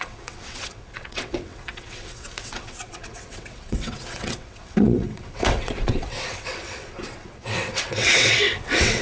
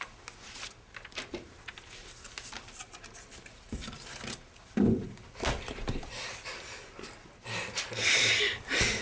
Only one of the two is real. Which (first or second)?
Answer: second